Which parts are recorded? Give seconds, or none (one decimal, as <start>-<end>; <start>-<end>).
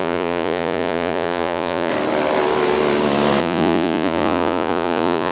1.9-3.4